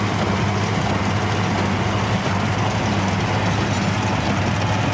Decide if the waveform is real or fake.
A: real